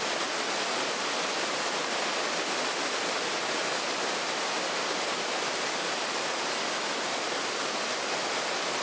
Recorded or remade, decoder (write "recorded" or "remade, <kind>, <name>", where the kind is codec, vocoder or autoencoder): recorded